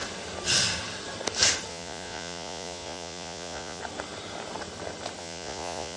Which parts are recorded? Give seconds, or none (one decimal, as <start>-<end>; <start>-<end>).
0.0-1.7; 3.8-5.2